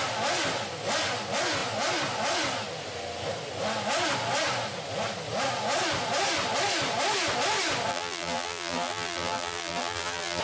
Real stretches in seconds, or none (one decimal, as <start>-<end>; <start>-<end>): 0.0-7.9

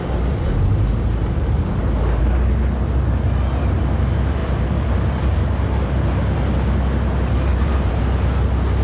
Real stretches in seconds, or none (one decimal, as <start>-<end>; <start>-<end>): 0.0-4.4; 6.1-7.5; 8.0-8.8

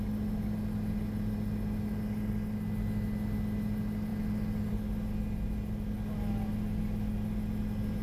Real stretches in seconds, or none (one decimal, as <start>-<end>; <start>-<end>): 0.0-8.0

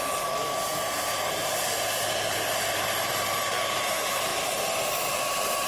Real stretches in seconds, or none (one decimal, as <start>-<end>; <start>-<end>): 4.3-5.2

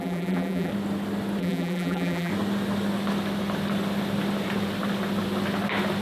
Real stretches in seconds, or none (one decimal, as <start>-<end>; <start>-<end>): 0.7-1.4; 2.3-6.0

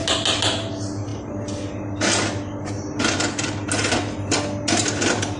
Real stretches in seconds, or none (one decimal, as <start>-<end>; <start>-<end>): 0.0-5.4